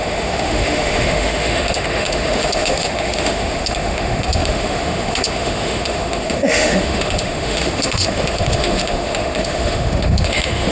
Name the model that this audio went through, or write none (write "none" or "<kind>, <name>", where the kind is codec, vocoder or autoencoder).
autoencoder, DAC-VAE